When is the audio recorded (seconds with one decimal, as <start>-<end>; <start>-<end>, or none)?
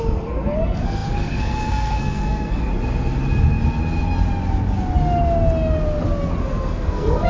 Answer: 2.7-6.4